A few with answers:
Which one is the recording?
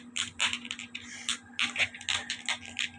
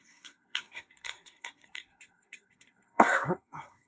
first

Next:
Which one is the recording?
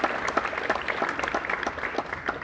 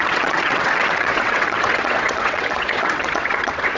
first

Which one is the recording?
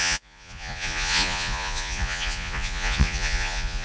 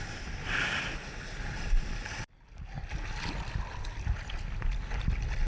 second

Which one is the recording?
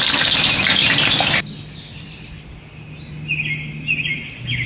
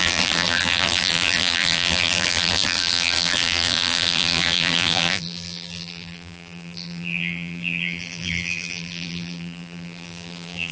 first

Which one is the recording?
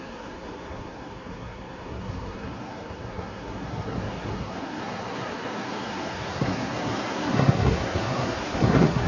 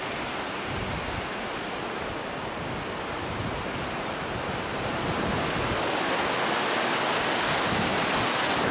second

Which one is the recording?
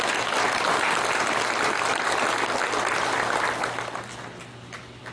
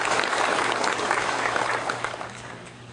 first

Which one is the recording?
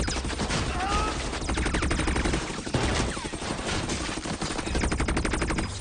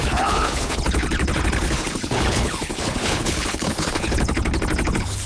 first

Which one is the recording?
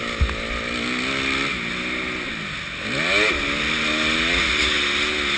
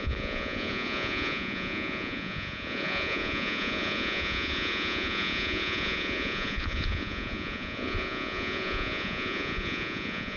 first